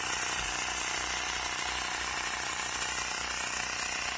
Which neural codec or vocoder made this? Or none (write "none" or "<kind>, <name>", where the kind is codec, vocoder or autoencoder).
none